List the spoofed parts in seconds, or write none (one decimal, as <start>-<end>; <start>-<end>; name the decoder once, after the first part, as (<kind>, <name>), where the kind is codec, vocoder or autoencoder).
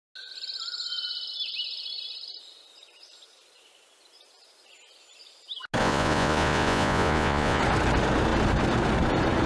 5.8-7.6 (vocoder, Vocos)